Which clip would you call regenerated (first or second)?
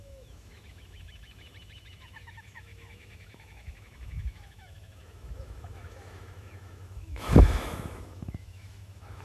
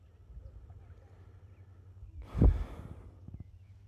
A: first